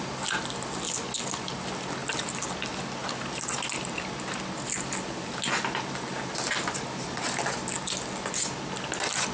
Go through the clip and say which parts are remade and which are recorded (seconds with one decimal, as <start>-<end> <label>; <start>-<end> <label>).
0.0-9.3 recorded